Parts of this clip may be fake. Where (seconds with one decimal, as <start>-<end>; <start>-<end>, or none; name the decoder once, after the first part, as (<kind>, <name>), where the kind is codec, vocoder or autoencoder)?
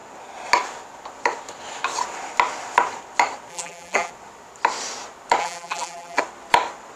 3.5-4.1 (vocoder, BigVGAN v2); 5.4-6.2